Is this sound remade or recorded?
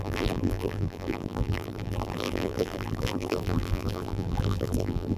remade